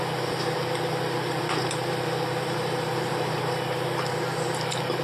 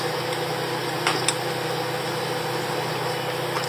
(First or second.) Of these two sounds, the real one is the second